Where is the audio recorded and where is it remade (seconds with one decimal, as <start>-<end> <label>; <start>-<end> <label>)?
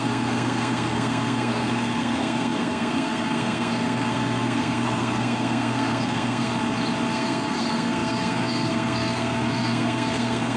0.0-6.5 remade; 6.5-7.1 recorded; 7.1-10.6 remade